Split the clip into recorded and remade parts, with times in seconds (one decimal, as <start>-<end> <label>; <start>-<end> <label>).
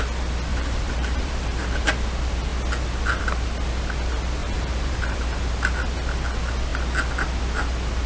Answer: 0.0-0.5 recorded; 0.5-1.9 remade; 1.9-4.4 recorded; 4.4-5.5 remade; 5.5-8.1 recorded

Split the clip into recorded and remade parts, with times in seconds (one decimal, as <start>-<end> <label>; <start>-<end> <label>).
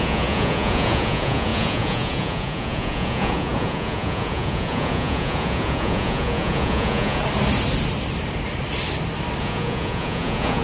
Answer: 0.0-7.2 remade; 7.2-9.4 recorded; 9.4-10.6 remade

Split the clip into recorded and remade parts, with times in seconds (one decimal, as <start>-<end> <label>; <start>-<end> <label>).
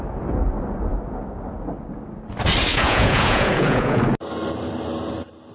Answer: 0.0-2.7 recorded; 2.7-4.0 remade; 4.0-5.5 recorded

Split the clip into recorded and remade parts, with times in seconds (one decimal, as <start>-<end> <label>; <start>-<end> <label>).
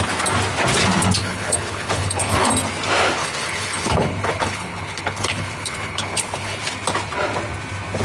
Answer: 0.0-1.2 recorded; 1.2-2.5 remade; 2.5-3.2 recorded; 3.2-6.6 remade; 6.6-8.0 recorded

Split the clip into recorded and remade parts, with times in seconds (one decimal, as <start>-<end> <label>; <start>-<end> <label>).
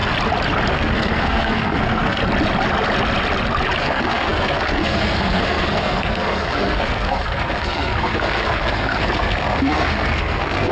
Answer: 0.0-0.7 recorded; 0.7-2.2 remade; 2.2-3.8 recorded; 3.8-10.7 remade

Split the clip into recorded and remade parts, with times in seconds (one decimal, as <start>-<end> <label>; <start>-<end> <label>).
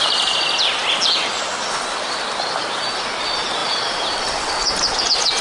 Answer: 0.0-3.6 recorded; 3.6-5.0 remade; 5.0-5.4 recorded